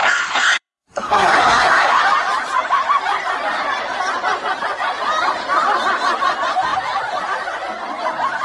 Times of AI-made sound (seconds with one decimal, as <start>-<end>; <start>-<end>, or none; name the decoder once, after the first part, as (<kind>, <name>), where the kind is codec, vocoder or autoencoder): 0.0-2.0 (codec, SNAC)